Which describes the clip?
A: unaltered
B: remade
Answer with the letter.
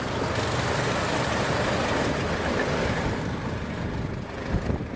A